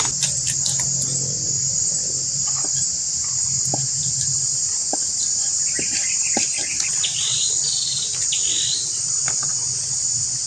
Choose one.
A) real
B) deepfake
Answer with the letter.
A